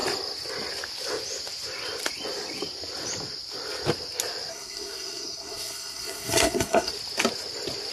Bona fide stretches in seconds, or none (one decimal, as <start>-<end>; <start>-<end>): 0.0-4.5; 6.9-7.9